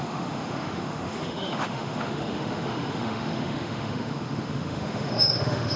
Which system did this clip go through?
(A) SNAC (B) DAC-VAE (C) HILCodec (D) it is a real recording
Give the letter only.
B